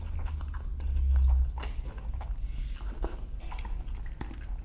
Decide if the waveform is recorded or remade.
recorded